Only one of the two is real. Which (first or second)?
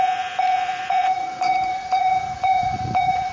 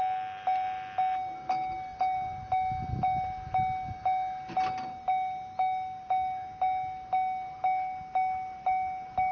second